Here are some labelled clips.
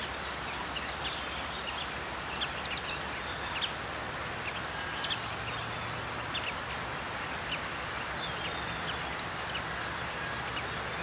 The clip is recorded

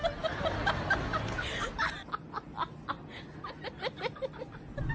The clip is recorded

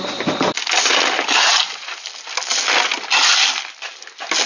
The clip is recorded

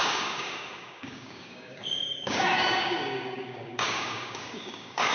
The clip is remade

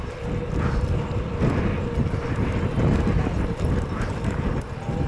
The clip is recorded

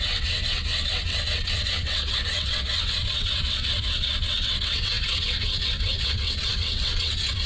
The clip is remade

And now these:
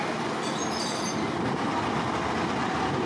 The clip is recorded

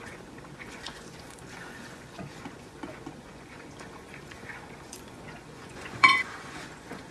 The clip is remade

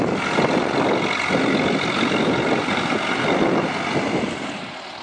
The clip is recorded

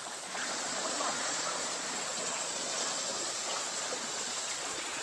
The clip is remade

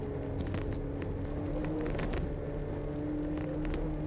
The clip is recorded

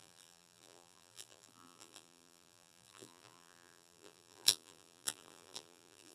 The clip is remade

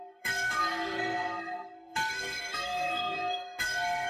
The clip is remade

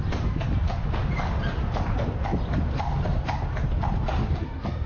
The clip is recorded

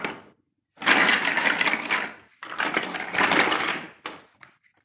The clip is recorded